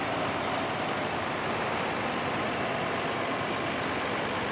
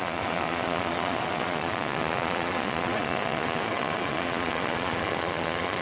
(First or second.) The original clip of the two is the first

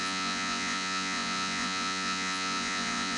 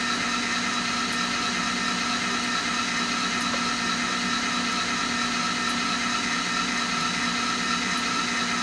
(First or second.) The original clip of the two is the second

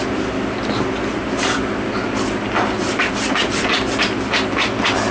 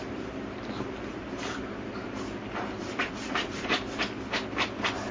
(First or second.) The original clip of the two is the first